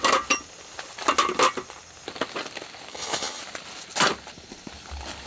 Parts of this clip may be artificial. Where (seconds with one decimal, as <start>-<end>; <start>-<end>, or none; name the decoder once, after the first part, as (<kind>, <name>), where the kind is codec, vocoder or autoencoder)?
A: 2.9-3.4 (vocoder, HiFi-GAN)